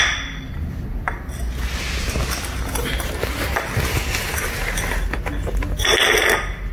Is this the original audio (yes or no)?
yes